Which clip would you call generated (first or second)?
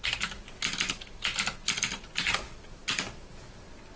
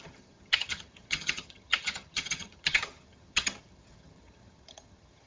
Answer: second